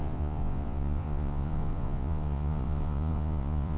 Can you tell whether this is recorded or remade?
remade